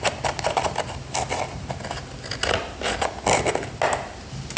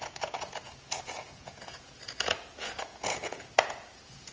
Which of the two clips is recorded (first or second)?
first